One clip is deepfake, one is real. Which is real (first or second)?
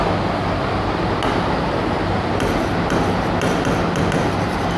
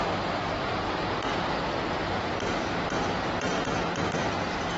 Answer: first